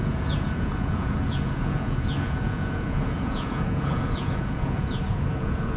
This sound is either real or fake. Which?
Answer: fake